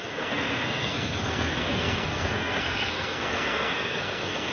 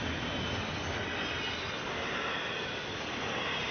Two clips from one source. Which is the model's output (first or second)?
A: first